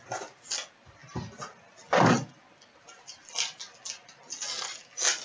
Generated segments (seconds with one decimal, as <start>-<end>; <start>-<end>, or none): none